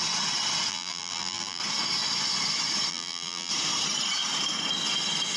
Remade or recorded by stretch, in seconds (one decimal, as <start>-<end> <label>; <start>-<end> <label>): 0.0-0.7 recorded; 0.7-1.6 remade; 1.6-2.9 recorded; 2.9-3.5 remade; 3.5-5.4 recorded